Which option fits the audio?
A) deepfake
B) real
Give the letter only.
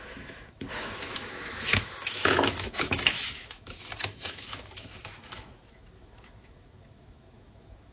A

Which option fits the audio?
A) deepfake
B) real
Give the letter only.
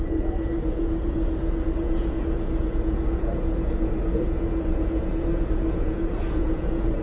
A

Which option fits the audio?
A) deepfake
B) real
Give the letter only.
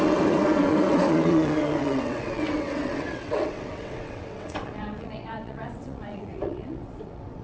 A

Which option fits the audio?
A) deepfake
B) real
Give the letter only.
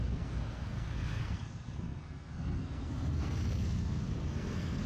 A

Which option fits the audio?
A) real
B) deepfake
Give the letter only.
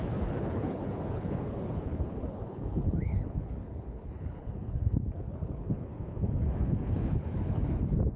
B